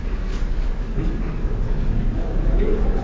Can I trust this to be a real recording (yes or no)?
no